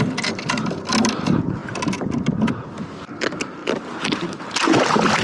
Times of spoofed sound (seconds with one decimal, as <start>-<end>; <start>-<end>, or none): none